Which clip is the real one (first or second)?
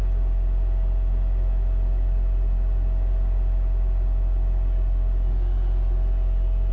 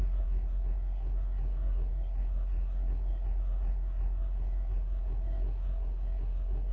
first